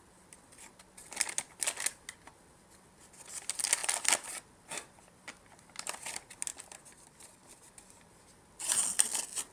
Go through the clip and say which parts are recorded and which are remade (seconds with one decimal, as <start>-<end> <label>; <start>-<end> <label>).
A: 0.0-0.7 remade; 0.7-3.8 recorded; 3.8-5.1 remade; 5.1-9.5 recorded